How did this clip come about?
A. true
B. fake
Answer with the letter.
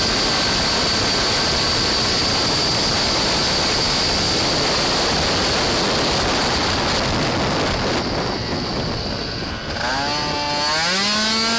A